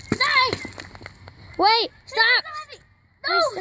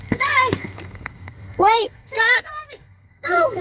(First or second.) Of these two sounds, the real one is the first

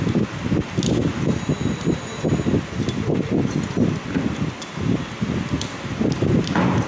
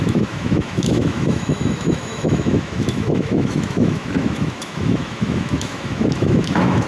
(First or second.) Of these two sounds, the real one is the first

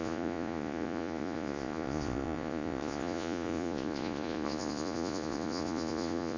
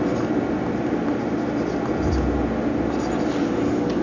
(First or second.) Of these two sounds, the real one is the second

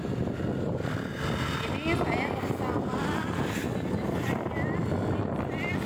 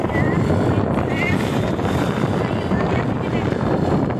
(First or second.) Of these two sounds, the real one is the first